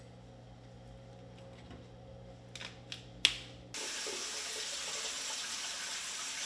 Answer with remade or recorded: recorded